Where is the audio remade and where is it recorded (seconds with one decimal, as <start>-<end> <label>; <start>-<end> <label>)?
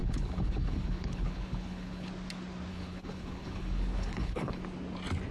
0.0-2.1 remade; 2.1-2.7 recorded; 2.7-4.6 remade; 4.6-5.3 recorded